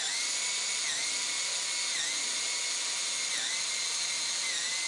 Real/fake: real